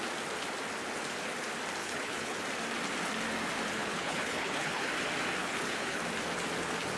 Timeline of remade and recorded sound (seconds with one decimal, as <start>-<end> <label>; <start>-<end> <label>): 0.0-1.8 recorded; 1.8-2.4 remade; 2.4-3.8 recorded; 3.8-4.9 remade; 4.9-5.4 recorded; 5.4-6.0 remade; 6.0-7.0 recorded

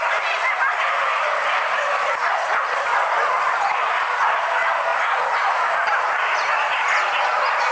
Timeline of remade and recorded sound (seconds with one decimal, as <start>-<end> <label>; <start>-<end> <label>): 0.0-7.7 recorded

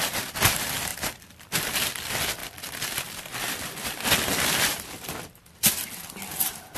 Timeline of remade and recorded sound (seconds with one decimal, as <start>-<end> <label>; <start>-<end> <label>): 0.0-0.9 recorded; 0.9-1.6 remade; 1.6-6.8 recorded

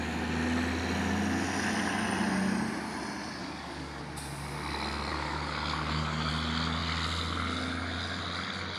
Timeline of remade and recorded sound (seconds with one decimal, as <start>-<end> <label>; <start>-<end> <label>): 0.0-3.4 recorded; 3.4-4.0 remade; 4.0-5.1 recorded; 5.1-6.3 remade; 6.3-8.8 recorded

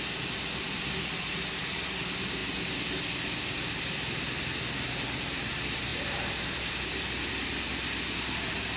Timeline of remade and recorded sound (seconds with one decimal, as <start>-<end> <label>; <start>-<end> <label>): 0.0-8.8 recorded

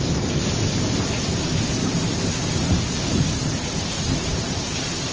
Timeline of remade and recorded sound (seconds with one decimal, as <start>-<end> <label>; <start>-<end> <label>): 0.0-1.8 recorded; 1.8-5.1 remade

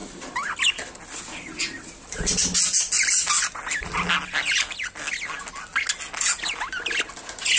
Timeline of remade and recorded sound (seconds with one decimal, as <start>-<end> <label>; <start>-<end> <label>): 0.0-7.6 recorded